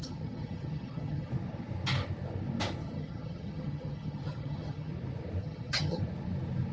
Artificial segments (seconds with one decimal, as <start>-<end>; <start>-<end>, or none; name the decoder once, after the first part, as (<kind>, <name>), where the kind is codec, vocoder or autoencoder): 0.0-1.3 (vocoder, HiFi-GAN); 2.8-4.9; 5.4-6.0